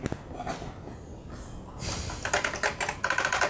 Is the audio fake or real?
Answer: real